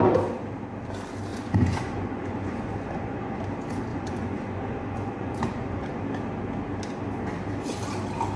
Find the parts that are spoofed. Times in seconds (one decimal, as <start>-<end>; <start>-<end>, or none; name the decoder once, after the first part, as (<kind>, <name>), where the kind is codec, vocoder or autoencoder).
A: 1.3-3.4 (vocoder, Vocos); 3.9-6.0